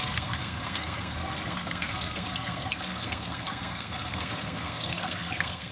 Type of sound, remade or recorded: remade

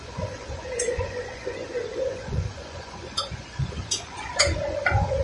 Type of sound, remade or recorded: remade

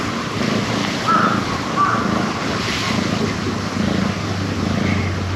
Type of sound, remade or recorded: recorded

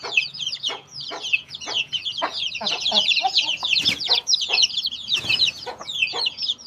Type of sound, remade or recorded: remade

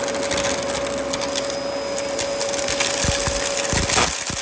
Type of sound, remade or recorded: recorded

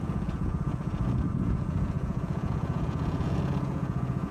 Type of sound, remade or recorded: remade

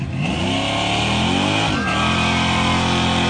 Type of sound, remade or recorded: recorded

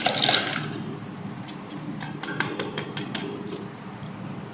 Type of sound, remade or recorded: remade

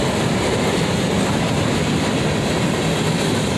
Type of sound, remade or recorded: recorded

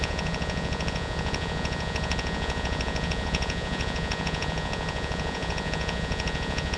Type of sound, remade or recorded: remade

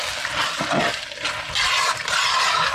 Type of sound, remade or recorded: recorded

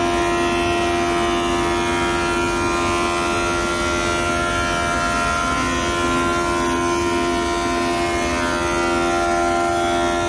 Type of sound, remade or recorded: recorded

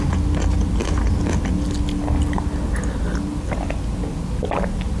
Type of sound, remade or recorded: recorded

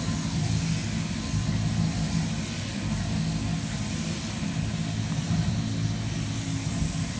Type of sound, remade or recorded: recorded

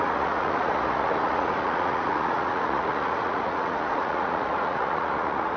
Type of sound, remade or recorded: remade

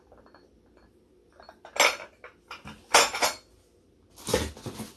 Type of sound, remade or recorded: recorded